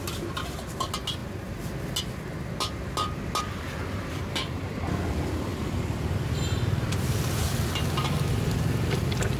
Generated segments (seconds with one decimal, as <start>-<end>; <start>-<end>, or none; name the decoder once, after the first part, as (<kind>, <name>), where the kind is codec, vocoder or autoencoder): 5.5-7.7 (vocoder, BigVGAN v2)